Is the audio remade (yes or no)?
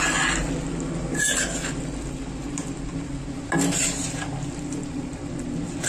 no